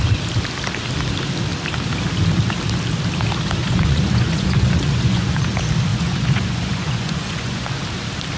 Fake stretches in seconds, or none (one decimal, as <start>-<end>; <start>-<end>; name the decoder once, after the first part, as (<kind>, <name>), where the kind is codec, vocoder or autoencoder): 3.6-5.4 (vocoder, Vocos); 5.9-7.8